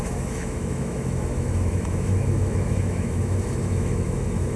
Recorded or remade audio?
remade